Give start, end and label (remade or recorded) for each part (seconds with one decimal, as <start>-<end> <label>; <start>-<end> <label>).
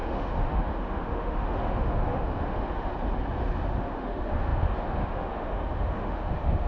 0.0-2.9 remade; 2.9-3.7 recorded; 3.7-6.7 remade